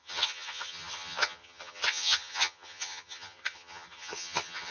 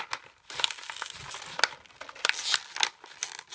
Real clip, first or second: second